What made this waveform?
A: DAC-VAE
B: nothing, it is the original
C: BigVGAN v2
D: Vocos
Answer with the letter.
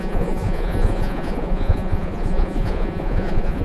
D